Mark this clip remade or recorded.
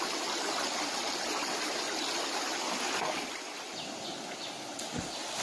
recorded